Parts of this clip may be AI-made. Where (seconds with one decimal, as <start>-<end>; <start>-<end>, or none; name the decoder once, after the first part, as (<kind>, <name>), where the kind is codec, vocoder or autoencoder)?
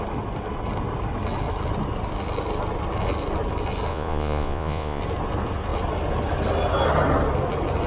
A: 3.9-5.0 (vocoder, Vocos)